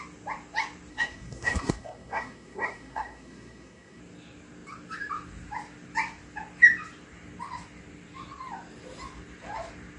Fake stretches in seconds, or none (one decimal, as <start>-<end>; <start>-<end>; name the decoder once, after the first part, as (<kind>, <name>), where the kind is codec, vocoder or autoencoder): 0.9-4.0 (codec, SNAC)

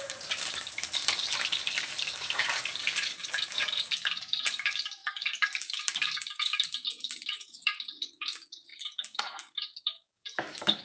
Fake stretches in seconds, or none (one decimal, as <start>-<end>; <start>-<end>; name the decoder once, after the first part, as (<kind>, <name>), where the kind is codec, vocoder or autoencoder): 0.0-10.8 (codec, DAC)

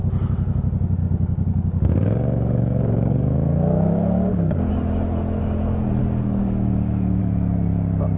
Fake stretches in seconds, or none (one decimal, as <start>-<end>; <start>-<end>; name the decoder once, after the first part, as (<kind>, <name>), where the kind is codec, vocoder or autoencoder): 1.0-4.7 (codec, DAC); 6.0-7.2

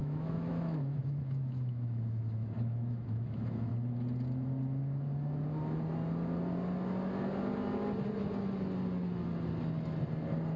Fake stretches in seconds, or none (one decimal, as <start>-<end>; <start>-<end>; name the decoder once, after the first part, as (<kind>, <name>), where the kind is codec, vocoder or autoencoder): 0.0-3.7 (autoencoder, DAC-VAE)

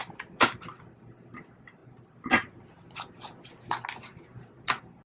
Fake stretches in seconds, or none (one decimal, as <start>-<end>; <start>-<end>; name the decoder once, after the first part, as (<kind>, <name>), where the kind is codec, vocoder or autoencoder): none